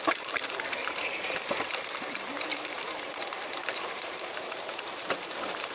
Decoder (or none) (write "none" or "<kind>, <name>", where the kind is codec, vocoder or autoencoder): vocoder, BigVGAN v2